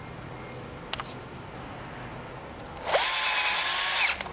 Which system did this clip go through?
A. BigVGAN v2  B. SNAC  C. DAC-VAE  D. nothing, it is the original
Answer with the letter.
D